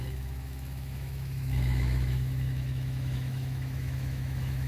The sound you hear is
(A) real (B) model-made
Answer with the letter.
B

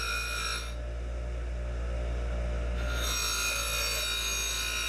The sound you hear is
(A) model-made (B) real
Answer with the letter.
B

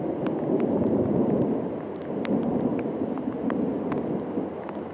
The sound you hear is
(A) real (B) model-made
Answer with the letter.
A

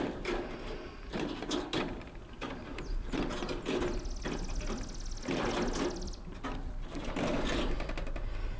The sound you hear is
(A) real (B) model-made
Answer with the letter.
A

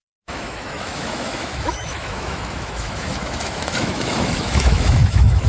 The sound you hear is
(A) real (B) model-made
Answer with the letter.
B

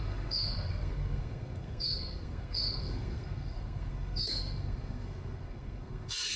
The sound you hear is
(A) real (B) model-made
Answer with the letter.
B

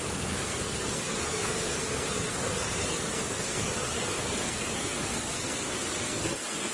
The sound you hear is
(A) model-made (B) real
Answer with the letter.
A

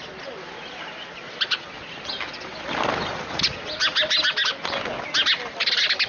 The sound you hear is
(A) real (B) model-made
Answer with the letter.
A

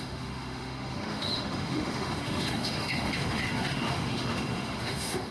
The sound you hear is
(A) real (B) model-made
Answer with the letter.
B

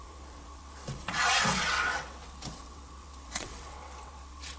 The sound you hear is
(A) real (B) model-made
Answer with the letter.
B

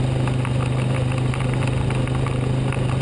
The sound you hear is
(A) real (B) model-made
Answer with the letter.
A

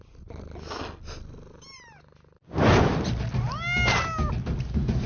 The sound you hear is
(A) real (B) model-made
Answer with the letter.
A